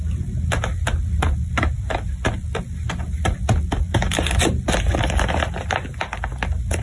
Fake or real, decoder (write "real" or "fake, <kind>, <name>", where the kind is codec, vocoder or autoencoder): real